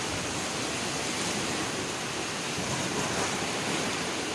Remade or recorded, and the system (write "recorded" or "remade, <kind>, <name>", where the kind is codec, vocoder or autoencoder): recorded